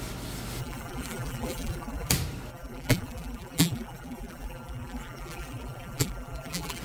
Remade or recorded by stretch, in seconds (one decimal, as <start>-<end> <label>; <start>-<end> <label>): 0.0-0.6 recorded; 0.6-2.1 remade; 2.1-2.5 recorded; 2.5-6.8 remade